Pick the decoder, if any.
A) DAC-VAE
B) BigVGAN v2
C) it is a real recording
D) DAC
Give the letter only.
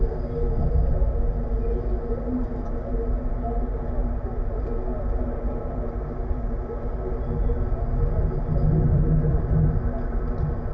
C